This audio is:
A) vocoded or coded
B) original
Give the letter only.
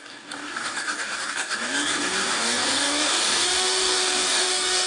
A